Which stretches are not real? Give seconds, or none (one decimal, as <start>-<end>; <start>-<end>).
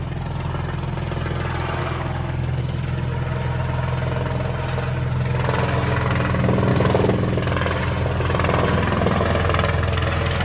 1.8-2.6; 6.7-7.8